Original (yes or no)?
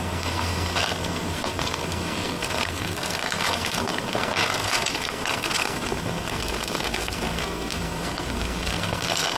no